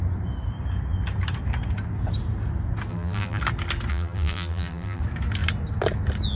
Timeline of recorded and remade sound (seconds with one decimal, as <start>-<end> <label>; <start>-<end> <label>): 0.0-2.9 recorded; 2.9-3.4 remade; 3.4-3.9 recorded; 3.9-5.0 remade; 5.0-6.4 recorded